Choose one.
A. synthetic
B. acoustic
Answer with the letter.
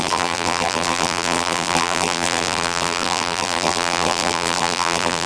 A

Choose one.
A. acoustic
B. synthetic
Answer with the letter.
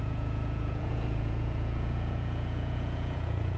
B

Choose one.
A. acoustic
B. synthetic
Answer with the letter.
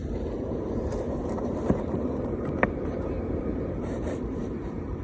B